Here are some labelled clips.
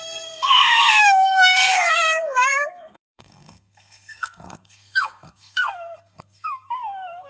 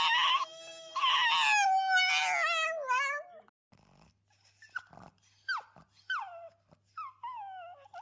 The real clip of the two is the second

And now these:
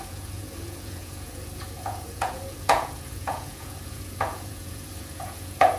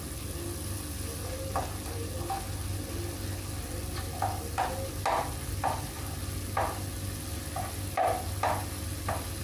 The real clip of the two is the second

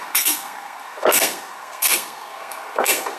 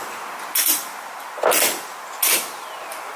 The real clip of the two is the second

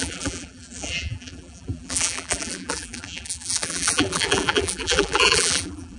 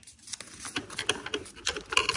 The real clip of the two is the second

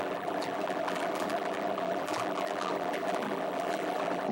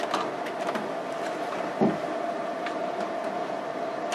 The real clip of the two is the second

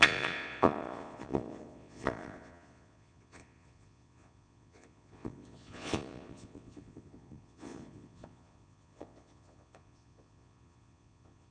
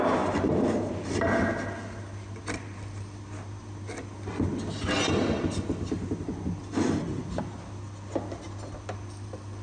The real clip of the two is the second